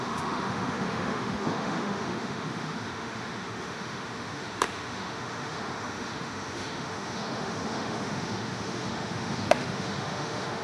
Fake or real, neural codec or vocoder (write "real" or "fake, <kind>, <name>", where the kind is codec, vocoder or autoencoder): fake, autoencoder, DAC-VAE